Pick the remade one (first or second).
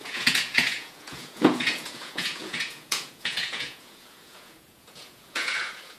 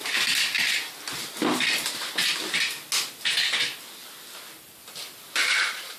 first